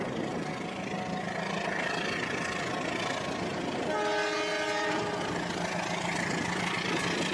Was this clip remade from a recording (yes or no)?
no